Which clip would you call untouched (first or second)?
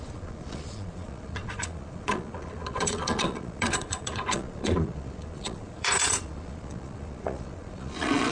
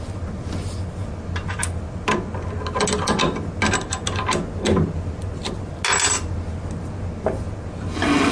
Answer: second